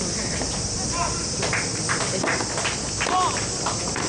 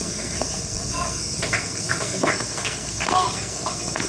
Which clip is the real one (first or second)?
first